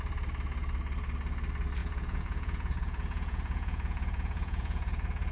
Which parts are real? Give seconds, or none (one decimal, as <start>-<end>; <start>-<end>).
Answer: 0.0-1.8